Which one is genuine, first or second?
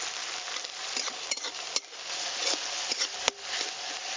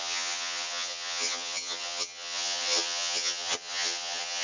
first